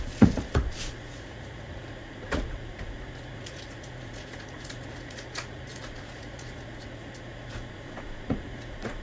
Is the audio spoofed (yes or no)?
yes